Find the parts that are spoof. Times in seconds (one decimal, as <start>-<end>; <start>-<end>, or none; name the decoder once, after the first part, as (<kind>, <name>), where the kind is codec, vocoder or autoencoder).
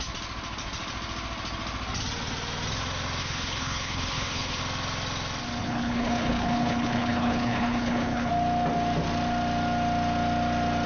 3.2-4.6 (codec, HILCodec); 5.6-8.3